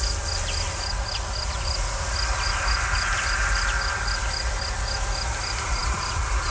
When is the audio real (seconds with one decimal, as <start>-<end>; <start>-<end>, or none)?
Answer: 0.0-5.8

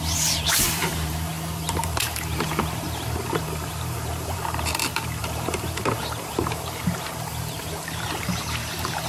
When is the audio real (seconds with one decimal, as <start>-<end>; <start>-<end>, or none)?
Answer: none

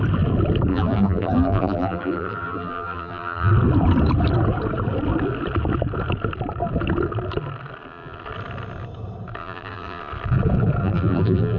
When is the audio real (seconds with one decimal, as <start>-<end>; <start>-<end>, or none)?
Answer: 0.0-0.7; 3.5-9.4; 10.0-10.8

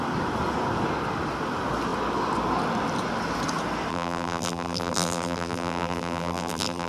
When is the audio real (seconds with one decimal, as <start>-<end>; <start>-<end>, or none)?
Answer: 0.0-3.9